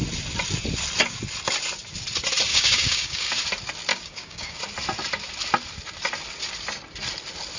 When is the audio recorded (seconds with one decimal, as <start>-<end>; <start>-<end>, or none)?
0.0-2.5; 3.3-3.9; 4.6-7.6